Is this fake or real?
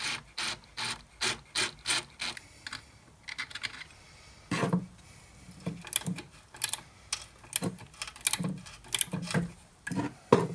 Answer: real